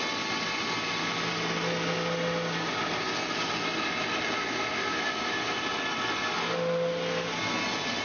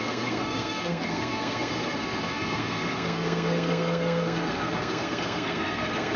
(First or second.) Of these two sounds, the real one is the first